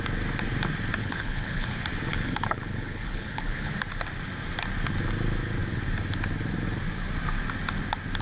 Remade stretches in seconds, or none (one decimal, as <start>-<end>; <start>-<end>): 1.0-1.7; 2.1-3.7

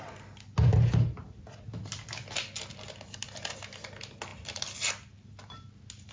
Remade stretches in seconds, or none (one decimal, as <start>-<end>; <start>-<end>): none

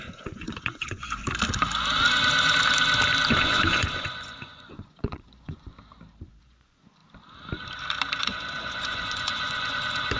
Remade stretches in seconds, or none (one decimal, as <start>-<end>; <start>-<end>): 0.0-1.2; 3.3-5.7; 6.4-7.0; 8.2-10.2

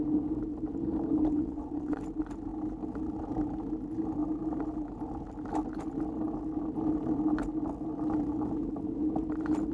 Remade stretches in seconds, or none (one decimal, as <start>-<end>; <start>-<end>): 1.3-2.0

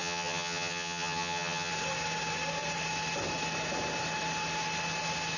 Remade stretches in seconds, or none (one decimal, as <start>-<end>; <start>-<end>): 0.0-1.7

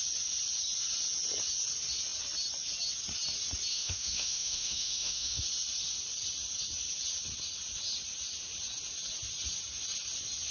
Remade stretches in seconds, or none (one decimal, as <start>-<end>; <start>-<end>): 3.7-5.4

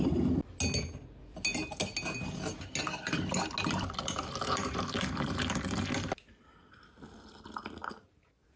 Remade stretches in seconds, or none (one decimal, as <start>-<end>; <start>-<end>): 3.6-6.4

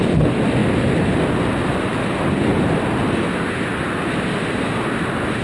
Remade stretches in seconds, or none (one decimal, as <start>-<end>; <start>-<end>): 0.6-2.0